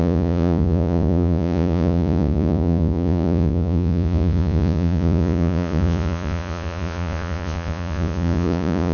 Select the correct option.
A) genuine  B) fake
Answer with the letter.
B